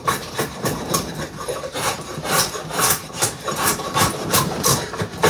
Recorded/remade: remade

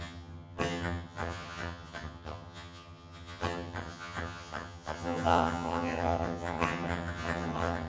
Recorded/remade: remade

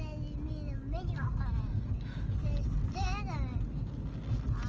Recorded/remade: recorded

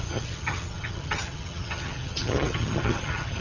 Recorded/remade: remade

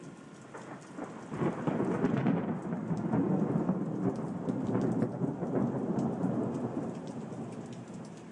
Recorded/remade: recorded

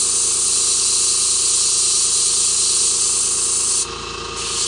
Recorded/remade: recorded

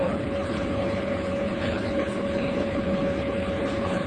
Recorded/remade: remade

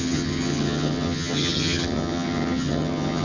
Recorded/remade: remade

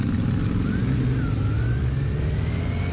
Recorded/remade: recorded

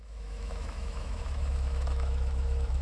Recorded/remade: remade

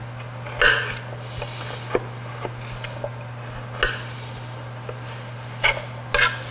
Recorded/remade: recorded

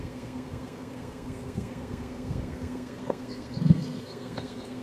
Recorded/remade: remade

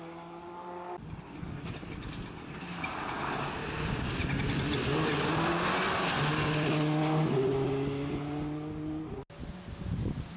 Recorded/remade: recorded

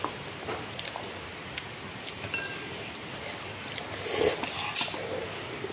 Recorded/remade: recorded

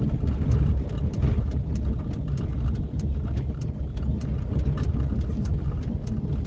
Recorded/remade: recorded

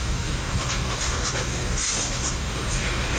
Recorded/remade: remade